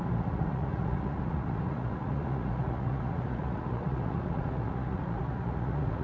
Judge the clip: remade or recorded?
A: remade